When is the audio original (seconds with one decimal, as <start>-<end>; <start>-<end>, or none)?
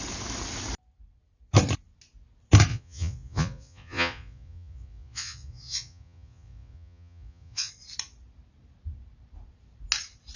0.0-2.7; 7.7-10.4